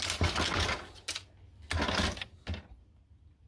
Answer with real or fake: real